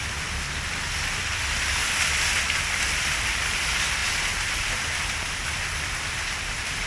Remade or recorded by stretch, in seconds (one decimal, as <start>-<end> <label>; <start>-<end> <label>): 0.0-6.9 recorded